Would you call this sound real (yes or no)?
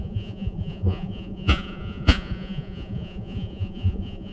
no